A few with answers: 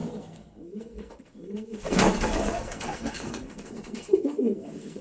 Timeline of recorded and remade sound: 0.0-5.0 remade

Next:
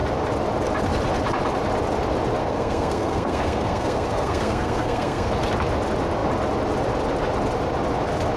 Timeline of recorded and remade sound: 0.0-2.4 recorded; 2.4-5.3 remade; 5.3-8.4 recorded

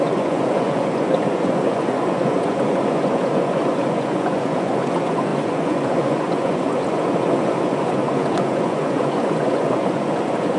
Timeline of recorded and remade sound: 0.0-10.6 remade

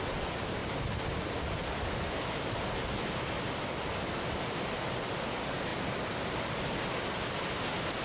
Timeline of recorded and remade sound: 0.0-8.0 recorded